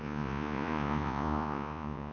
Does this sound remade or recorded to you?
remade